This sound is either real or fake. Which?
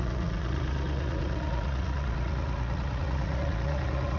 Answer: fake